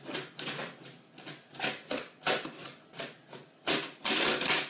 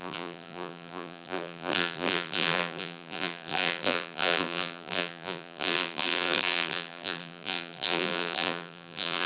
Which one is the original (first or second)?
first